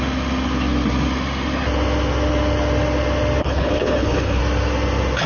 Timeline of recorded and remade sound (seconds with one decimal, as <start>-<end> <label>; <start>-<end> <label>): 0.0-3.4 recorded; 3.4-4.4 remade; 4.4-5.3 recorded